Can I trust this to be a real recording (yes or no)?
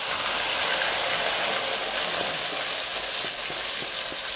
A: yes